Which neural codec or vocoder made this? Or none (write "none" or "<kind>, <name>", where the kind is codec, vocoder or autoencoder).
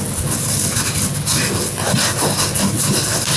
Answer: none